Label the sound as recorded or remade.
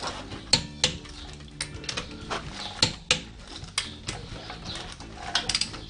recorded